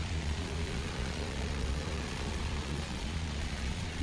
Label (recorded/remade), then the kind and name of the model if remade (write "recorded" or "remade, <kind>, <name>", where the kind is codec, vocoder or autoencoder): remade, vocoder, Vocos